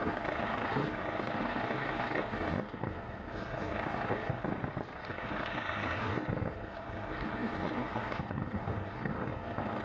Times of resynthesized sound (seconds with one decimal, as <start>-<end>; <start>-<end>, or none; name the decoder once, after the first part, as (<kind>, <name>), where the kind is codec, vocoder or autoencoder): 0.0-4.5 (codec, SNAC); 5.1-9.8